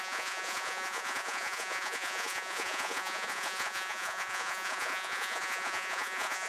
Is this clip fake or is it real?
fake